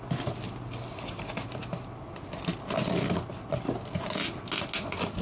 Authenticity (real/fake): real